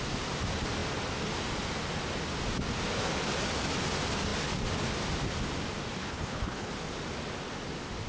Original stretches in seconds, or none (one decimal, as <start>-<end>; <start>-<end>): 0.0-6.0; 6.7-8.1